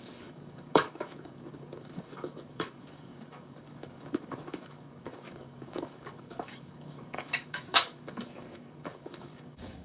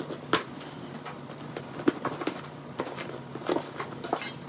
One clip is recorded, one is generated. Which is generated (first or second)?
first